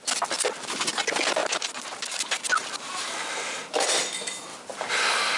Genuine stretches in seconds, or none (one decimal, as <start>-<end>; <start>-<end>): 0.0-5.4